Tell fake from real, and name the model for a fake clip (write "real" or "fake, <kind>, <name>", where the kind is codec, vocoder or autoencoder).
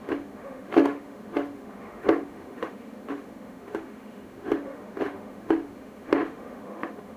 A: fake, autoencoder, DAC-VAE